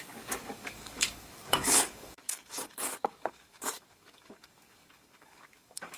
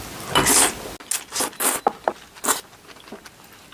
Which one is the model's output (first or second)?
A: first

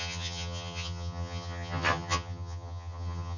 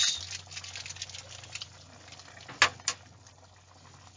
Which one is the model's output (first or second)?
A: first